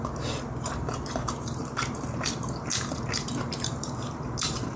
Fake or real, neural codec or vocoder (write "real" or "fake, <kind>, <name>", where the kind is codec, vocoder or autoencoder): fake, vocoder, BigVGAN v2